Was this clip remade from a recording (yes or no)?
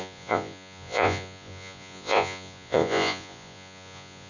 yes